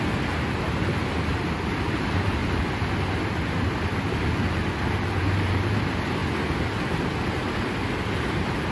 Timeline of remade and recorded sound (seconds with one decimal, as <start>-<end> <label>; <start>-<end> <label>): 0.0-1.0 remade; 1.0-1.9 recorded; 1.9-2.4 remade; 2.4-3.6 recorded; 3.6-6.2 remade; 6.2-8.1 recorded; 8.1-8.7 remade